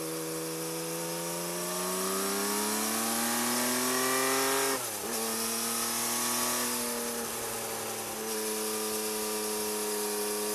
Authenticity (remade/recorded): recorded